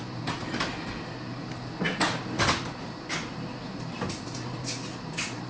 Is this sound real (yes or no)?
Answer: yes